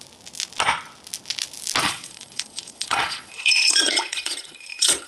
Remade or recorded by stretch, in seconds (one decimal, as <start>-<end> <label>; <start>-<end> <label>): 0.0-1.8 recorded; 1.8-5.1 remade

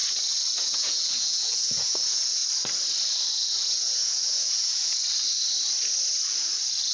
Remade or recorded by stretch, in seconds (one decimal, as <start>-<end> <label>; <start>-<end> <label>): 0.0-0.6 recorded; 0.6-2.4 remade; 2.4-3.3 recorded; 3.3-5.0 remade; 5.0-6.9 recorded